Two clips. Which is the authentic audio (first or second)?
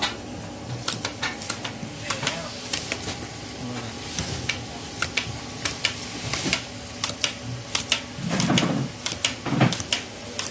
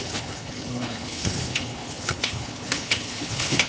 first